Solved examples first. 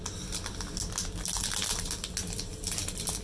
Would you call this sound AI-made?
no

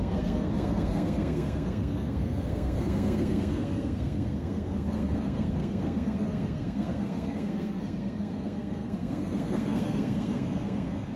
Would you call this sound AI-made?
yes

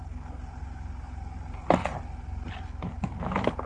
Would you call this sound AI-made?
no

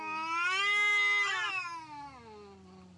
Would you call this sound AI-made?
no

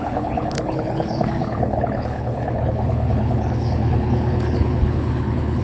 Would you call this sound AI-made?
yes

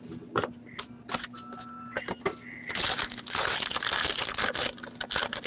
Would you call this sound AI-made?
no